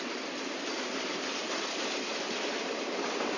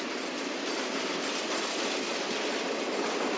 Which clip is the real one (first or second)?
second